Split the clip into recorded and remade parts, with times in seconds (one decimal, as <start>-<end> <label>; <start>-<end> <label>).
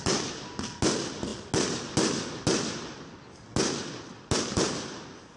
0.0-5.4 recorded